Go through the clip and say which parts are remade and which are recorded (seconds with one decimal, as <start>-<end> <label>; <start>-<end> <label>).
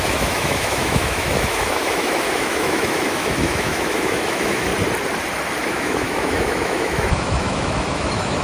0.0-4.7 remade; 4.7-5.7 recorded; 5.7-8.4 remade